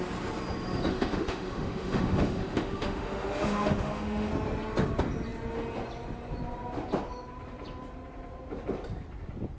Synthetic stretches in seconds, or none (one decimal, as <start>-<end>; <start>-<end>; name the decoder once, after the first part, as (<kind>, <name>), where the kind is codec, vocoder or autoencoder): 0.9-4.3 (autoencoder, DAC-VAE)

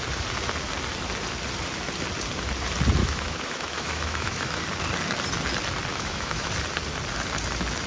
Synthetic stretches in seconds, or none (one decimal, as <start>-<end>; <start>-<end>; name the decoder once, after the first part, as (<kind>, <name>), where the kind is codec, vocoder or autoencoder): 3.0-4.6 (autoencoder, DAC-VAE); 5.9-6.5

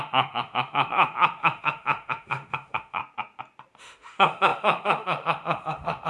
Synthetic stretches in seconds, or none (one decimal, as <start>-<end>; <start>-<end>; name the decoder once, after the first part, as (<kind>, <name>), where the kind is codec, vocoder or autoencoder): 0.0-3.0 (autoencoder, DAC-VAE); 3.8-6.1

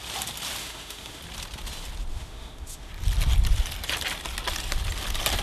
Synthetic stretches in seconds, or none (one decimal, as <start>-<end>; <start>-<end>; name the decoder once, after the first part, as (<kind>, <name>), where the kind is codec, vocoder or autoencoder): 0.6-1.2 (autoencoder, DAC-VAE); 2.1-2.9

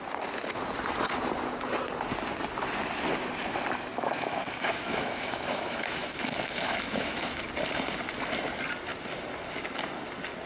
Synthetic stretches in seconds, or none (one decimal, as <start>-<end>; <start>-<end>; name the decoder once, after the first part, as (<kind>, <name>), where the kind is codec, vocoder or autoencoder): 3.9-7.4 (autoencoder, DAC-VAE)